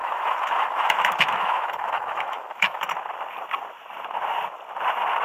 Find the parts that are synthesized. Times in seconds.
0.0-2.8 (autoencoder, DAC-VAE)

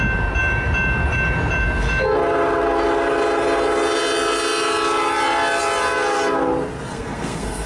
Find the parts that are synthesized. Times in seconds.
6.9-7.7 (codec, SNAC)

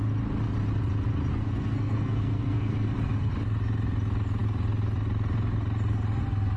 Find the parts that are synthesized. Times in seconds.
1.3-3.3 (codec, SNAC)

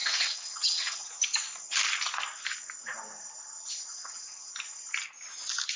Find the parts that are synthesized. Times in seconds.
0.0-1.1 (vocoder, WaveNeXt); 3.9-4.5

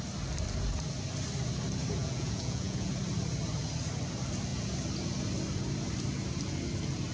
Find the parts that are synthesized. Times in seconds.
2.0-2.9 (vocoder, Vocos)

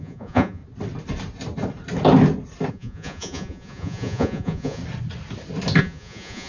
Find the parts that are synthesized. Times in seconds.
0.0-0.6 (vocoder, Vocos); 2.7-4.8; 5.8-6.5

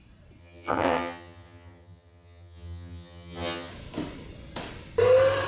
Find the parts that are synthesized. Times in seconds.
0.4-3.7 (vocoder, HiFi-GAN)

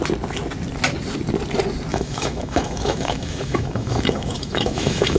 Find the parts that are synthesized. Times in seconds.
1.9-5.2 (autoencoder, DAC-VAE)